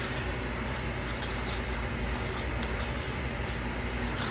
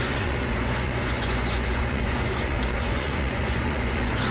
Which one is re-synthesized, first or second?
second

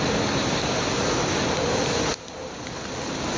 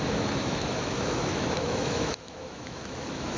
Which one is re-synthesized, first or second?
second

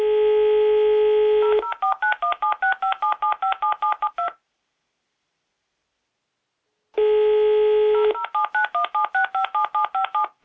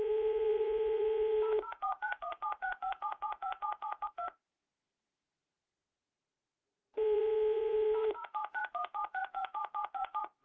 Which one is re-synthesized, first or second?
second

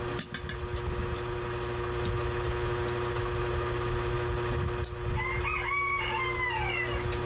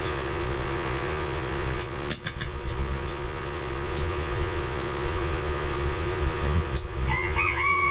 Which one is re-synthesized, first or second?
second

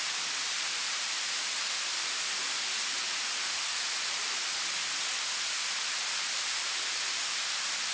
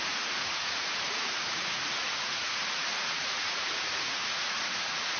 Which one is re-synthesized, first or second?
second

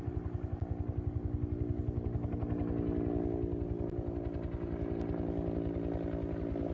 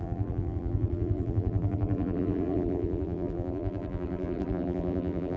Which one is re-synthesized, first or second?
second